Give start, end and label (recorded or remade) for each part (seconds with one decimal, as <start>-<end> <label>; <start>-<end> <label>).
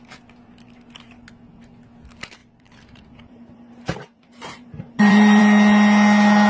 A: 0.0-2.4 recorded; 2.4-5.4 remade; 5.4-6.5 recorded